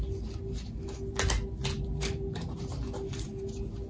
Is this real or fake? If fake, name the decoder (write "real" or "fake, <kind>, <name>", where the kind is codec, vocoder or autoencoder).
real